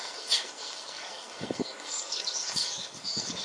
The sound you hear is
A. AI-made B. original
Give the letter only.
A